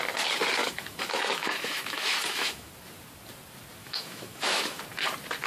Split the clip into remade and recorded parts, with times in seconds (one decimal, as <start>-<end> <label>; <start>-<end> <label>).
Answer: 0.0-0.6 recorded; 0.6-2.7 remade; 2.7-3.8 recorded; 3.8-4.8 remade; 4.8-5.5 recorded